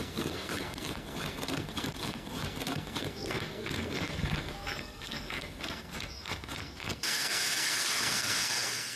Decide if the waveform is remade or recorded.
remade